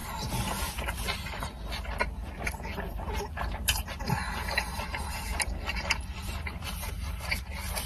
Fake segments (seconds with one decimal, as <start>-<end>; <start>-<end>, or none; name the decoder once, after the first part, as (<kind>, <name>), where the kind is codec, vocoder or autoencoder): 2.7-7.4 (vocoder, BigVGAN v2)